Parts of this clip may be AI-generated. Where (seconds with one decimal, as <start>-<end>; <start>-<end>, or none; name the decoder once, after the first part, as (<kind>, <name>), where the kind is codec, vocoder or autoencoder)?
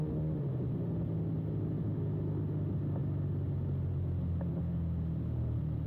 none